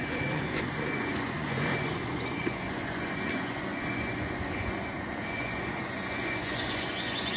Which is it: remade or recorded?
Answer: remade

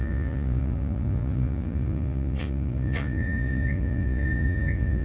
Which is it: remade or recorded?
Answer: remade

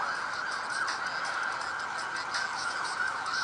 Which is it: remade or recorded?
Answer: recorded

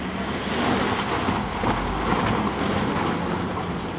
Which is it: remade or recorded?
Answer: recorded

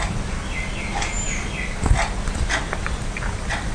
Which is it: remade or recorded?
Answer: recorded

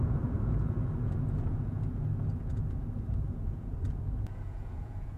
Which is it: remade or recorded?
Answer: remade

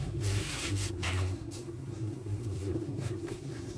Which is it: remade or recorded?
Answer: remade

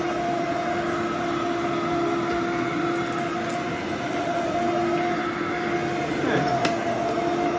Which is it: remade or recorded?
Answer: recorded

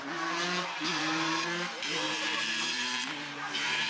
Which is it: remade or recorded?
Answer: remade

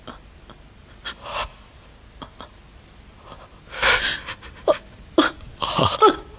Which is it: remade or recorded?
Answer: recorded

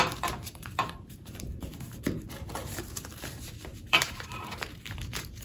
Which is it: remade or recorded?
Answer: remade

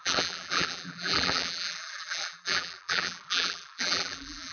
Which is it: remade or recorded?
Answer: remade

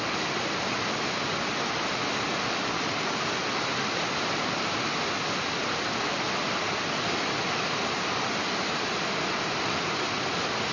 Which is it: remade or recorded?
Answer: recorded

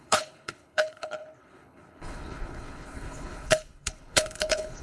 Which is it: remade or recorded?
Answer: remade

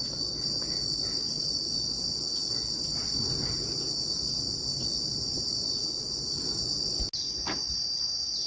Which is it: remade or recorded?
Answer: recorded